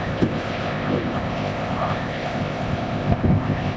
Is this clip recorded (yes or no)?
no